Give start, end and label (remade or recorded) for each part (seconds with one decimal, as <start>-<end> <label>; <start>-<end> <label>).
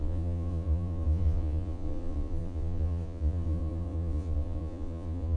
0.0-5.4 remade